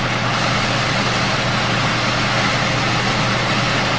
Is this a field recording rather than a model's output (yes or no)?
yes